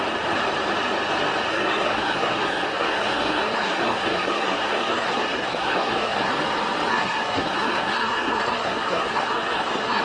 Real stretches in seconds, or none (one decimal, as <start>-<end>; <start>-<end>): 0.0-1.5; 6.3-6.9